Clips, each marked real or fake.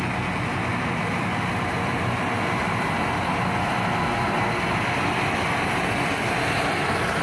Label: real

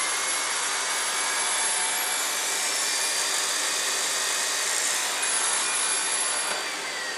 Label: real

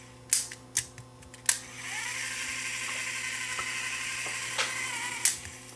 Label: real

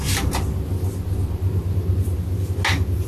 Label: real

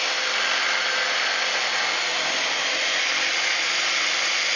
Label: real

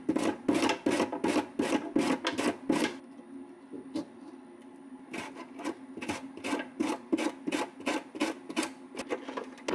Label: real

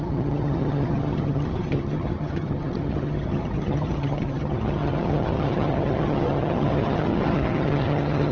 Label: fake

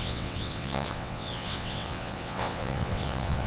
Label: fake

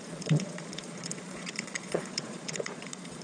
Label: fake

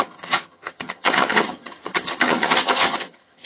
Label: fake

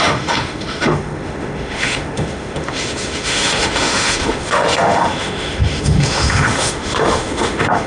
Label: fake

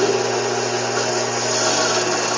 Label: real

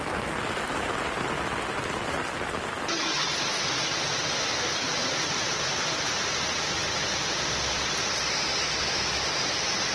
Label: real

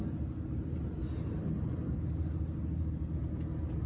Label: real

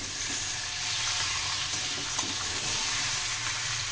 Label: real